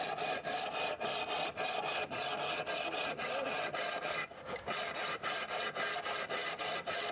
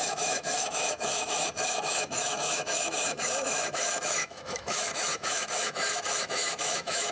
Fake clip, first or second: second